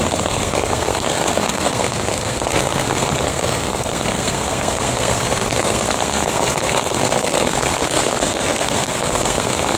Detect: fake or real fake